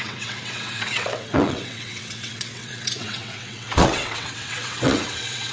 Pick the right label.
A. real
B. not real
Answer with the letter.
B